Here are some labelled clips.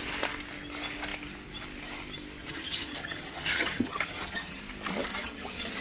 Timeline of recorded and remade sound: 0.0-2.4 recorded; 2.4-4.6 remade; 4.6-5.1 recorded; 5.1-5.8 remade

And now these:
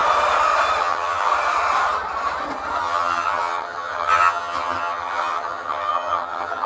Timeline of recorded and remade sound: 0.0-0.8 recorded; 0.8-1.3 remade; 1.3-2.8 recorded; 2.8-6.7 remade

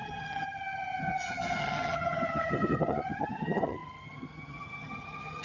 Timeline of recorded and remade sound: 0.0-5.4 remade

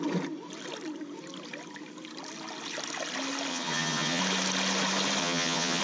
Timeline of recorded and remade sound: 0.0-3.5 recorded; 3.5-4.2 remade; 4.2-5.2 recorded; 5.2-5.8 remade

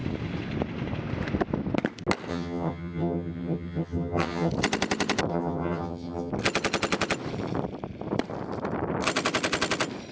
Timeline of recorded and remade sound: 0.0-2.3 recorded; 2.3-4.5 remade; 4.5-5.3 recorded; 5.3-6.3 remade; 6.3-10.1 recorded

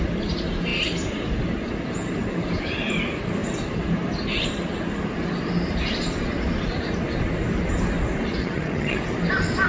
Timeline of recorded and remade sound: 0.0-8.4 recorded; 8.4-9.0 remade; 9.0-9.7 recorded

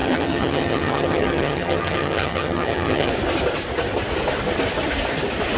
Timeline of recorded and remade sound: 0.0-3.1 remade; 3.1-5.6 recorded